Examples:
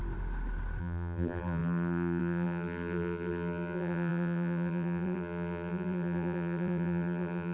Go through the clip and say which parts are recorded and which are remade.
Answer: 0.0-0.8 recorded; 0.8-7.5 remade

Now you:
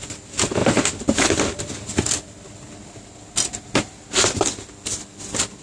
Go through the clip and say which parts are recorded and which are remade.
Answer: 0.0-5.6 recorded

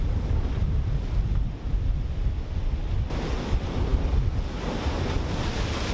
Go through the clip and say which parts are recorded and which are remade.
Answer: 0.0-5.9 recorded

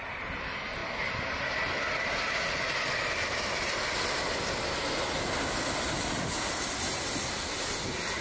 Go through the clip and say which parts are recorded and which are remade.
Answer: 0.0-8.2 recorded

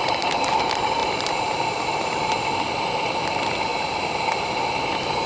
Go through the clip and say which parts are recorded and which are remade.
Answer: 0.0-5.3 recorded

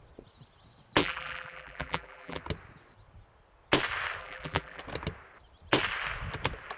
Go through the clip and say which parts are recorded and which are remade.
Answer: 0.0-1.0 recorded; 1.0-2.4 remade; 2.4-4.2 recorded; 4.2-4.8 remade; 4.8-6.8 recorded

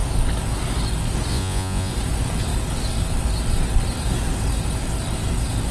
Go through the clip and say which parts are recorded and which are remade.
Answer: 0.0-1.3 recorded; 1.3-1.9 remade; 1.9-5.7 recorded